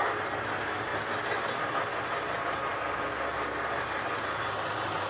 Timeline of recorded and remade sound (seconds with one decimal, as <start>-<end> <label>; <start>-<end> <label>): 0.0-5.1 recorded